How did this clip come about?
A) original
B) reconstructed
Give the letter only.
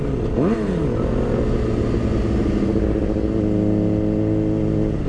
A